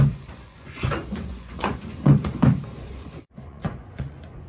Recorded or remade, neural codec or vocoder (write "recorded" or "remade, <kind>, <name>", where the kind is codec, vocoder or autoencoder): remade, vocoder, Vocos